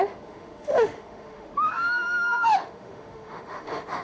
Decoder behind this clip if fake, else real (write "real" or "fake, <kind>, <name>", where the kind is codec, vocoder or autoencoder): fake, autoencoder, DAC-VAE